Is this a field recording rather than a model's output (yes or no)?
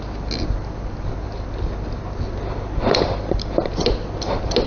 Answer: yes